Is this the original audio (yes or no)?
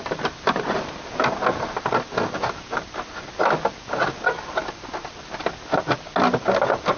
yes